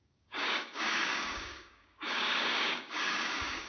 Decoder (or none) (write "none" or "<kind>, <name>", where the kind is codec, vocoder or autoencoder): codec, DAC